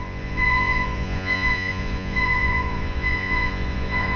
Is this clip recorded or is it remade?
remade